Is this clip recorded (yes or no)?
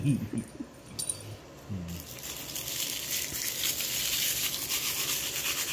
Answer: yes